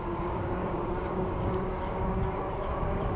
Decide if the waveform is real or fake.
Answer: fake